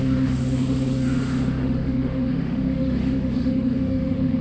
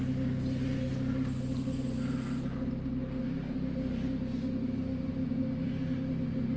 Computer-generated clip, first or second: first